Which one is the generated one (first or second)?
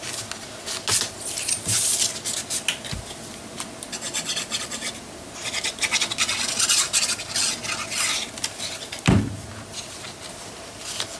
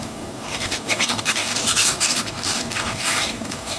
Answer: second